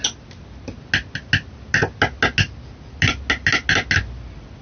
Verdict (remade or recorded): recorded